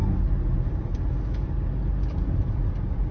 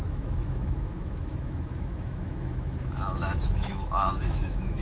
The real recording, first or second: first